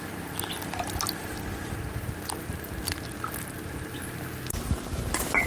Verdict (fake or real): real